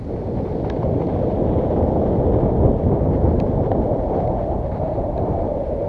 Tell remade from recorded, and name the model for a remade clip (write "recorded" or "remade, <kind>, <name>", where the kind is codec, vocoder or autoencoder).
recorded